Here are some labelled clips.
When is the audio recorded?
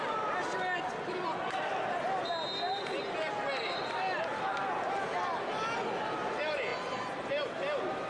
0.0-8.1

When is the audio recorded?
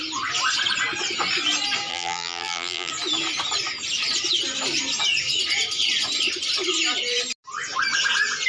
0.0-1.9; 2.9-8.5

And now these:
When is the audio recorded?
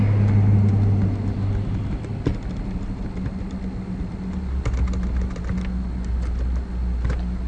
0.0-7.5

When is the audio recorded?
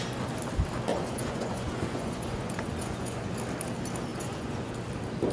0.0-0.9; 3.4-4.1; 4.7-5.3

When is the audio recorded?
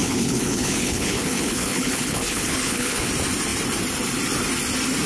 3.1-5.1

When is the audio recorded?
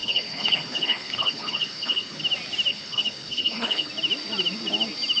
2.2-2.7; 3.9-5.2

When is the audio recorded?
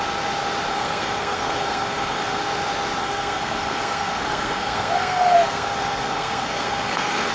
0.0-0.7; 2.4-3.0